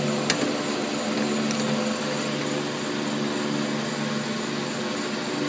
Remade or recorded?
recorded